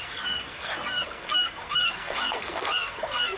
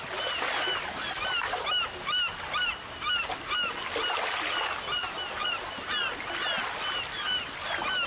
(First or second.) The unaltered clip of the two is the second